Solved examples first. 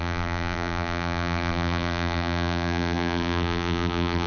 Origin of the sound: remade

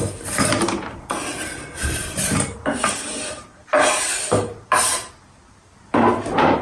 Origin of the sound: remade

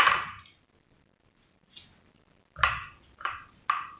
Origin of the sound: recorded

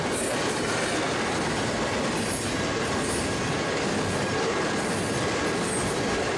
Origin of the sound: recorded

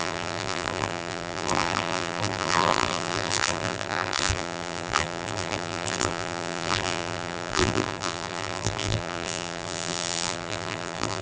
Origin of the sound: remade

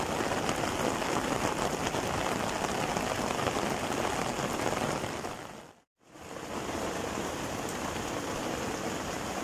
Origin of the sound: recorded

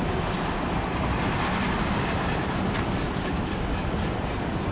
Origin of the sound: remade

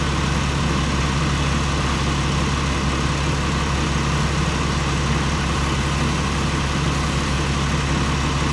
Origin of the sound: recorded